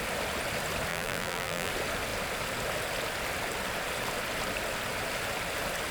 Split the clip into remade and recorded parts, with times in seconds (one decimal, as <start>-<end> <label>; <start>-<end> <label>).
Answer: 0.0-0.9 recorded; 0.9-1.7 remade; 1.7-5.9 recorded